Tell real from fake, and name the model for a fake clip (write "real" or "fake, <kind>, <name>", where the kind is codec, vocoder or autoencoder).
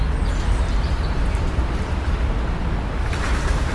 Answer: real